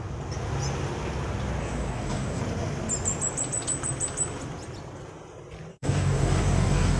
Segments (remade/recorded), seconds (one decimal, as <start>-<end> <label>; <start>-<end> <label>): 0.0-1.6 recorded; 1.6-2.4 remade; 2.4-5.7 recorded; 5.7-7.0 remade

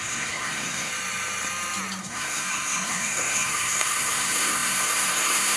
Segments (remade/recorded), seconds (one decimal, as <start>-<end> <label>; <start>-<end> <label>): 0.0-0.9 remade; 0.9-2.0 recorded; 2.0-5.6 remade

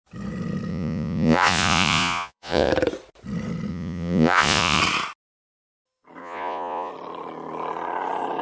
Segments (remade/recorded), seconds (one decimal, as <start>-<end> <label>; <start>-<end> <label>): 0.0-0.7 recorded; 0.7-2.7 remade; 2.7-3.7 recorded; 3.7-4.8 remade; 4.8-6.2 recorded; 6.2-6.9 remade; 6.9-8.4 recorded

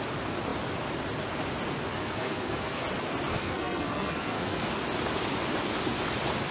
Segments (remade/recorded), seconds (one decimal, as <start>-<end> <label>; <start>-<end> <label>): 0.0-2.0 recorded; 2.0-2.8 remade; 2.8-3.3 recorded; 3.3-4.7 remade; 4.7-6.5 recorded

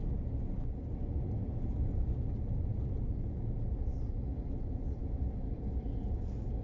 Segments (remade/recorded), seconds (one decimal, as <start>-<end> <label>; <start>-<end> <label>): 0.0-5.0 recorded; 5.0-5.6 remade; 5.6-6.6 recorded

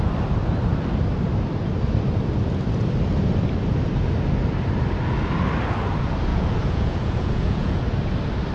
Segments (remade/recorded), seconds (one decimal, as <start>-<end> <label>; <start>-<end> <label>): 0.0-6.3 recorded; 6.3-7.8 remade; 7.8-8.5 recorded

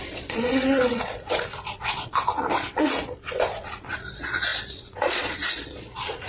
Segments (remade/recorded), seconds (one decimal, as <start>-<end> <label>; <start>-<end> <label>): 0.0-6.3 remade